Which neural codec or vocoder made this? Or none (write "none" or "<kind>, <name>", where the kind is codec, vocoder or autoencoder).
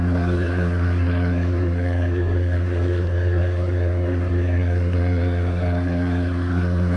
codec, SNAC